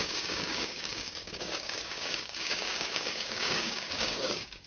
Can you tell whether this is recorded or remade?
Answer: remade